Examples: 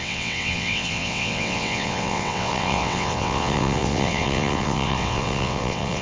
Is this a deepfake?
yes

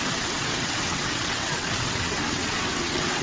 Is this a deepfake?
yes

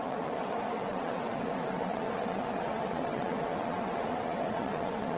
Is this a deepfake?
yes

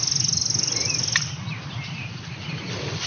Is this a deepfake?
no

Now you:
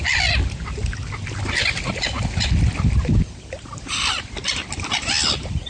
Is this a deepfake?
no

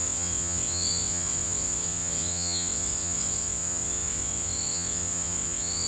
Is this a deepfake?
yes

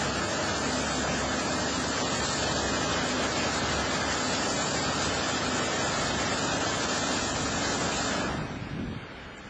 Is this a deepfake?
no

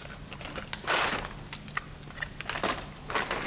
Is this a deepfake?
no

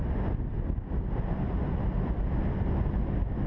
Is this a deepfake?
no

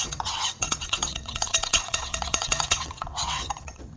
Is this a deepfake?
yes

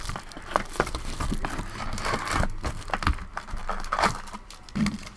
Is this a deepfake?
no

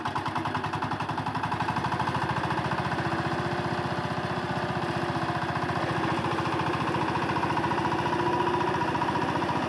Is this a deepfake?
no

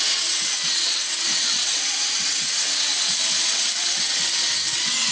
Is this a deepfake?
yes